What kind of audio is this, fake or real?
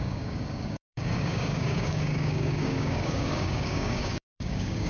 fake